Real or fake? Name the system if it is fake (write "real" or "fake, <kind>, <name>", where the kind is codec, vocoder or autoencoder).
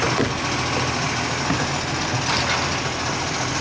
real